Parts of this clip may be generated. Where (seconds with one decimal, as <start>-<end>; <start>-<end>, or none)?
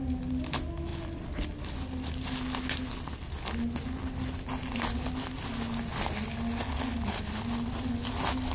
none